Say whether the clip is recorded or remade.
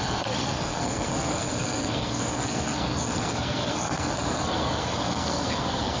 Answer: remade